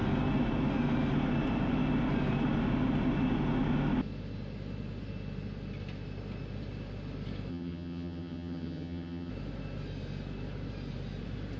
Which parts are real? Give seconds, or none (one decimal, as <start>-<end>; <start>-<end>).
0.0-7.5; 9.3-11.6